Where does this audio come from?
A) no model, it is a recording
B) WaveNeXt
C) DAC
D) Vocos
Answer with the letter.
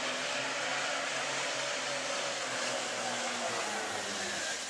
A